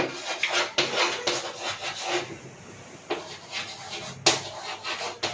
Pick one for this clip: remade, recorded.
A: recorded